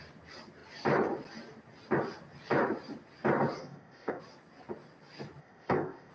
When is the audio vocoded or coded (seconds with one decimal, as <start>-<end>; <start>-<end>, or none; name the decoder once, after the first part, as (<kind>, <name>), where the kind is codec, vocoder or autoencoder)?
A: 3.6-4.2 (codec, ZipCodec); 5.4-6.1